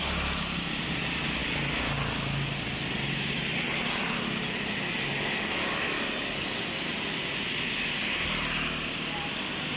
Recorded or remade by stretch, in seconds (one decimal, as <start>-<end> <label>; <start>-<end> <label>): 0.0-9.8 recorded